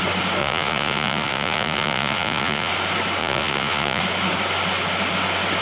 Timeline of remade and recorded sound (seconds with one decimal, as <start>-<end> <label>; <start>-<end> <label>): 0.0-0.4 recorded; 0.4-2.7 remade; 2.7-3.2 recorded; 3.2-4.0 remade; 4.0-5.6 recorded